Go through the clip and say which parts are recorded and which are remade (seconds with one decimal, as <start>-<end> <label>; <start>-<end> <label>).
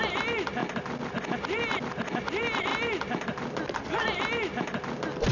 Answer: 0.0-5.3 recorded